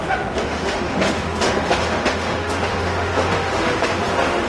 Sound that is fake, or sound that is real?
fake